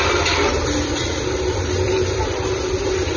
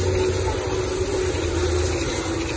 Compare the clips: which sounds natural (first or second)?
second